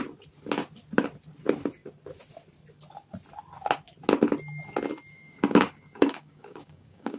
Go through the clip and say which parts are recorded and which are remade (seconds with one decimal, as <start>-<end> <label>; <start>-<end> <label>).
0.0-5.1 recorded; 5.1-7.2 remade